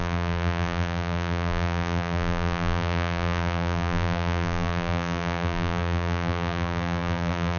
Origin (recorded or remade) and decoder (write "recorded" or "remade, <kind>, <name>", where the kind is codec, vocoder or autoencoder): remade, vocoder, BigVGAN v2